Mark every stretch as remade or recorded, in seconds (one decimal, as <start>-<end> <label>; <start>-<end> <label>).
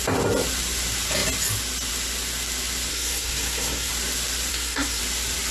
0.0-2.9 recorded; 2.9-3.9 remade; 3.9-4.5 recorded; 4.5-5.0 remade; 5.0-5.5 recorded